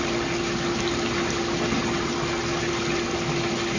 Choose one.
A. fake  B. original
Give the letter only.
B